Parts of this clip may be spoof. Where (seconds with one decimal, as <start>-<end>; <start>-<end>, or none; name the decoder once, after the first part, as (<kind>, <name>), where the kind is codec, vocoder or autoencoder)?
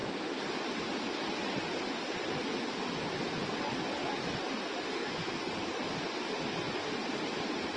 4.9-5.4 (codec, SNAC)